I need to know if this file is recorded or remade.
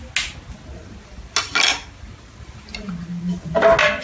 recorded